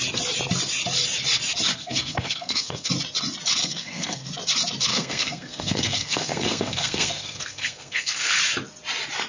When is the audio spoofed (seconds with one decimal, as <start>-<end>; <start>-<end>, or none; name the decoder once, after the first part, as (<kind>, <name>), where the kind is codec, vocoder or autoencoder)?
1.7-2.9 (codec, SNAC); 3.6-4.3; 4.9-8.4